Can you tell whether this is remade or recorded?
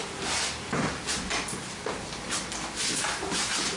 recorded